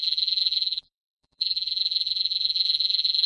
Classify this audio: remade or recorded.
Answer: remade